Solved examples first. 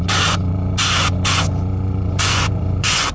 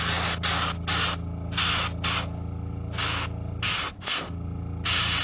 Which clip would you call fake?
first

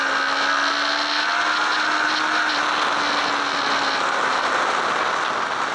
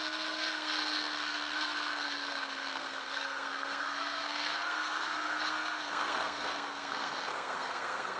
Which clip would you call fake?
second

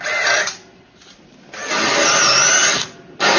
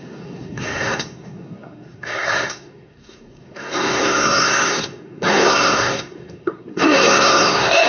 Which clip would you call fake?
second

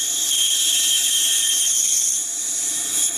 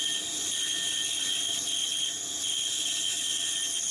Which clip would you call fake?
first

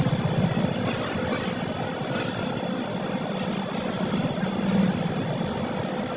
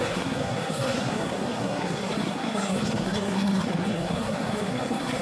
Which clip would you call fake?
second